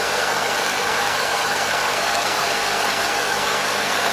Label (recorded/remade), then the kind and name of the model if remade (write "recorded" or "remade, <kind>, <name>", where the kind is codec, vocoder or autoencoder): remade, codec, SNAC